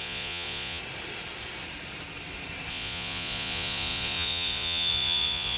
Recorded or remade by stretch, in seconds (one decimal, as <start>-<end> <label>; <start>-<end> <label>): 0.0-0.8 remade; 0.8-2.7 recorded; 2.7-5.6 remade